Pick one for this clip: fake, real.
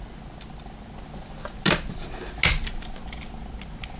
real